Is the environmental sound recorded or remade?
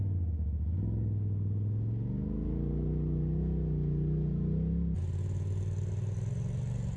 recorded